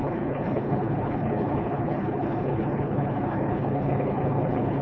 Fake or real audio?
fake